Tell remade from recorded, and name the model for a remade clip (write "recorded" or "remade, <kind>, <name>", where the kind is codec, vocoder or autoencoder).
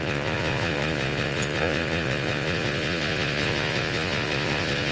remade, vocoder, Vocos